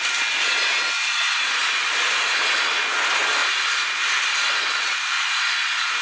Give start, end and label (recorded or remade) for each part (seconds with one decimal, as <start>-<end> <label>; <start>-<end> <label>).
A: 0.0-6.0 recorded